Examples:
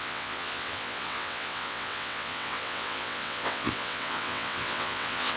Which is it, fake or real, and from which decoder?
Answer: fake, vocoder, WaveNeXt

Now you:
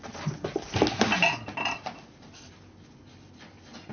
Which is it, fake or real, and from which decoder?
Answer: real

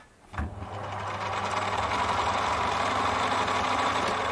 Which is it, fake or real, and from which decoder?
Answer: real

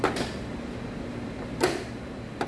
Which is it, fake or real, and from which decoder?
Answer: real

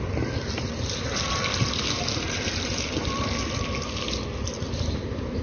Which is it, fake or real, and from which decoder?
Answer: real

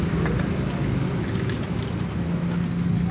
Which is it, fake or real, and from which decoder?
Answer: real